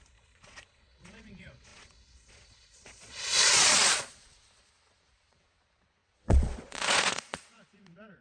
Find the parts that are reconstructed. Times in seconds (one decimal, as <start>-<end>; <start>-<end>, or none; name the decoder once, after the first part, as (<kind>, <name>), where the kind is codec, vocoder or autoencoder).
0.0-8.2 (vocoder, Vocos)